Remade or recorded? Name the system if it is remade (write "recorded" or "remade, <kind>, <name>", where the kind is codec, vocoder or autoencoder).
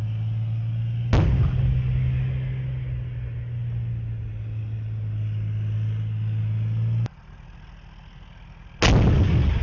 recorded